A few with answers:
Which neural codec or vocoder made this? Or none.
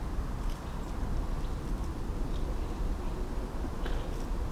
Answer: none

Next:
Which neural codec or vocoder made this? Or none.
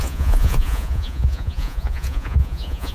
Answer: vocoder, Vocos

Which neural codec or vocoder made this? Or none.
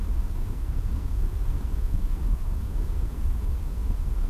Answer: codec, SNAC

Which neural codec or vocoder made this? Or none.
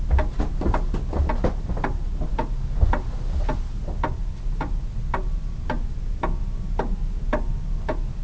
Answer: none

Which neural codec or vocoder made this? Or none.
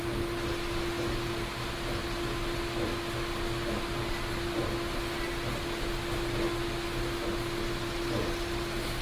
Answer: none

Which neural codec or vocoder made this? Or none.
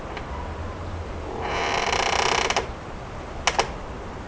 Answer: none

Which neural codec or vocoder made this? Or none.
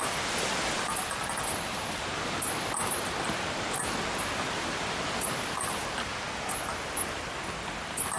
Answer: vocoder, BigVGAN v2